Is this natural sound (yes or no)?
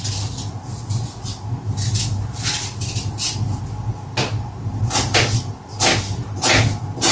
yes